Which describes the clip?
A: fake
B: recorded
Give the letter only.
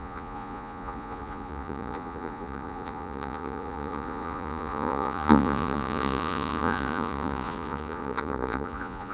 A